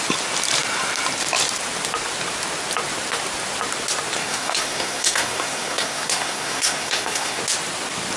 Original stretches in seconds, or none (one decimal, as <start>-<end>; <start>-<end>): 0.0-4.2; 7.4-8.2